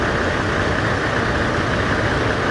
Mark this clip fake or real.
real